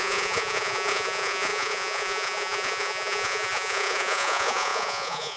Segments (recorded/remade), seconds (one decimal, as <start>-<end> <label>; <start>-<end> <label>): 0.0-5.4 remade